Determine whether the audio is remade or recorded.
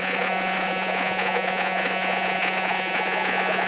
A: remade